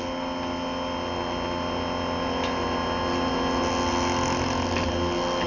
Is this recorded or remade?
recorded